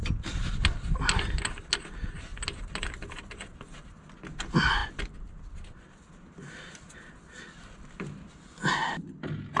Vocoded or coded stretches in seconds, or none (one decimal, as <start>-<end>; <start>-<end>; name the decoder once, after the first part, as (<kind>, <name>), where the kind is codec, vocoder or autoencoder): none